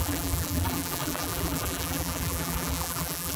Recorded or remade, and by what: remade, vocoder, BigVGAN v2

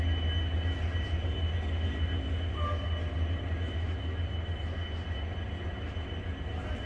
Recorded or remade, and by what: recorded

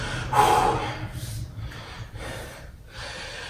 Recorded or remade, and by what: recorded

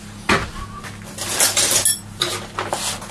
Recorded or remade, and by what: recorded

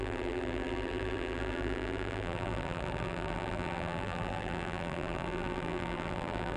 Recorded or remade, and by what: remade, vocoder, BigVGAN v2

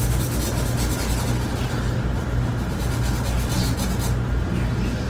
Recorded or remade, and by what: recorded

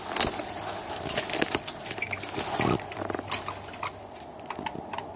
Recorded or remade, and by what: remade, vocoder, BigVGAN v2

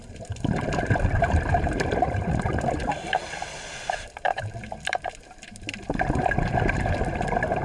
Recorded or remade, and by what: remade, vocoder, BigVGAN v2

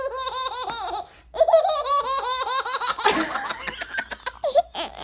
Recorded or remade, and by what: recorded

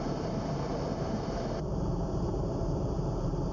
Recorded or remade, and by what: remade, vocoder, BigVGAN v2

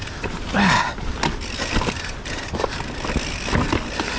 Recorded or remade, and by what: remade, vocoder, BigVGAN v2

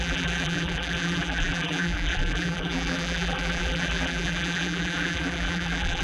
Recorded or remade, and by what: remade, vocoder, BigVGAN v2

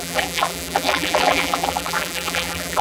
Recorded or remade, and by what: remade, vocoder, BigVGAN v2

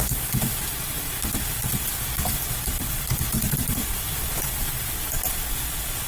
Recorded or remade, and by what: remade, vocoder, BigVGAN v2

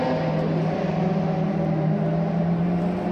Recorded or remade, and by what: recorded